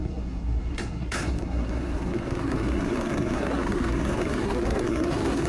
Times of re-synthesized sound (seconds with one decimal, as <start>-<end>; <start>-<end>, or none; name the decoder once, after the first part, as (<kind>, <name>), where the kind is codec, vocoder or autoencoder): 0.0-5.5 (codec, SNAC)